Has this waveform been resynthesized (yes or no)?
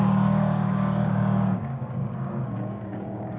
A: yes